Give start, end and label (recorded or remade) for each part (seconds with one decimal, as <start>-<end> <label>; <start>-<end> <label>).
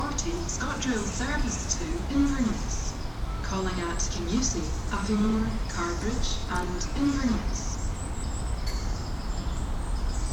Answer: 0.0-2.2 remade; 2.2-4.9 recorded; 4.9-10.3 remade